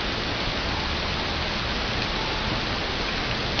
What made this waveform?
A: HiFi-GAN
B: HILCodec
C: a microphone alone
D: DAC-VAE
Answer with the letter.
C